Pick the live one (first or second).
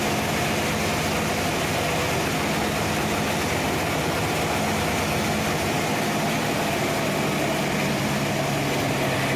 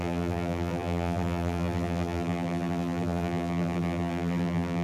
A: first